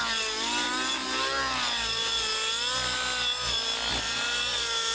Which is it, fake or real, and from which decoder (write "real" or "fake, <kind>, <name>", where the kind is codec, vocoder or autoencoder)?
real